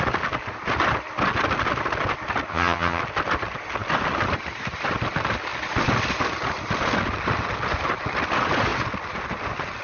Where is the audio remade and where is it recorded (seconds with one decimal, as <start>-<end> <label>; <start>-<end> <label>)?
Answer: 0.0-2.5 recorded; 2.5-3.0 remade; 3.0-9.8 recorded